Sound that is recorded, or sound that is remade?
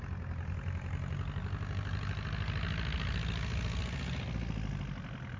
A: recorded